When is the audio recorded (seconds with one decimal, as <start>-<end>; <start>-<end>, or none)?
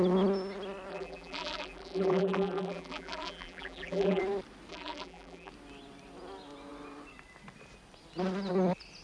0.0-0.9; 4.2-4.7; 5.5-9.0